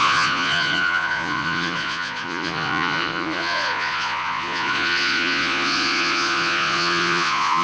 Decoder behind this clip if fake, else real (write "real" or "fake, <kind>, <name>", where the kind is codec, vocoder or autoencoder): fake, vocoder, Vocos